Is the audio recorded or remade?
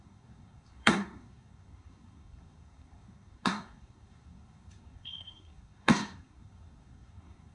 remade